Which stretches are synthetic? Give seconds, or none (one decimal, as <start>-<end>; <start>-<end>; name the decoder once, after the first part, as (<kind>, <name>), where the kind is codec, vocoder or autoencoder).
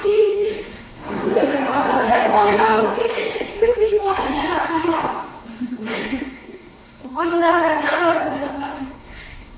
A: 0.0-9.6 (codec, SNAC)